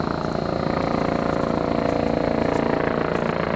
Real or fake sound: real